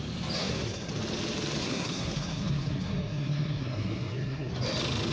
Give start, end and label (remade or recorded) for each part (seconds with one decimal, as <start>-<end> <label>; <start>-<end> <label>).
0.0-0.4 recorded; 0.4-0.9 remade; 0.9-1.6 recorded; 1.6-4.5 remade; 4.5-5.1 recorded